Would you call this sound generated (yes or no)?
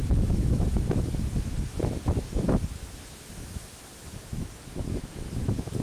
yes